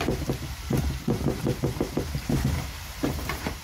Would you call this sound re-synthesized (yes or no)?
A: yes